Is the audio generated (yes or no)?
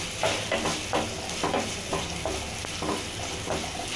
no